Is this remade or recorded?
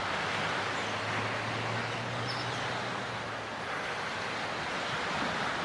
recorded